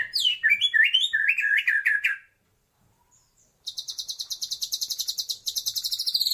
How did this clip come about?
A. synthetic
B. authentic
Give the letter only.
A